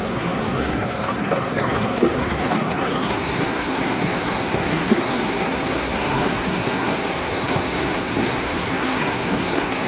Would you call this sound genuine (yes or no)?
no